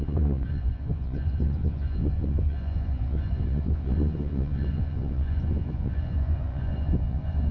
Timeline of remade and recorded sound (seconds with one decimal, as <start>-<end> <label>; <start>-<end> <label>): 0.0-7.5 remade